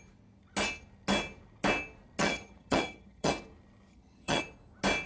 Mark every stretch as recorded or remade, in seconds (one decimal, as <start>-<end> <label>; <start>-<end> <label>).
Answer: 0.0-2.2 recorded; 2.2-3.3 remade; 3.3-3.9 recorded; 3.9-4.4 remade; 4.4-5.1 recorded